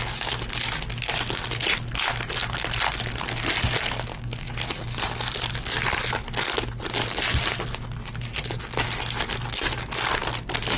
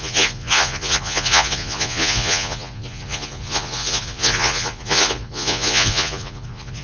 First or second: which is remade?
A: second